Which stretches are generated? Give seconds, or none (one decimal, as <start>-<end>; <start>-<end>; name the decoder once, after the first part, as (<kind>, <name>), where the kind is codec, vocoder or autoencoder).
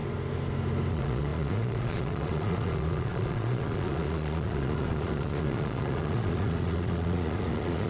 0.9-7.9 (vocoder, Vocos)